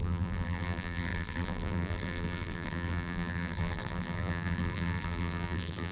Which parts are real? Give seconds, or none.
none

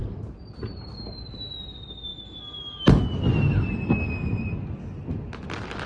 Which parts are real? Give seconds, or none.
0.0-5.9

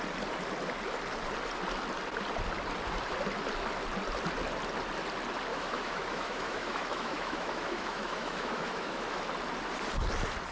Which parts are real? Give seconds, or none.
0.0-5.5; 9.2-10.5